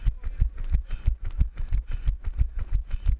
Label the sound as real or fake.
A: real